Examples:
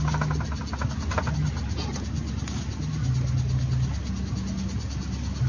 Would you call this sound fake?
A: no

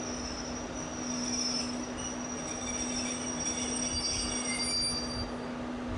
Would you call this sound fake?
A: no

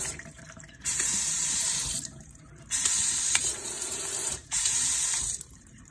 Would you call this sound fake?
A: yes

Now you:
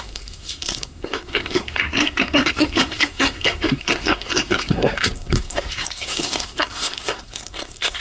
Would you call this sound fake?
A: yes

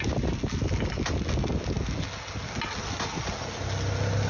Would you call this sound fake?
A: no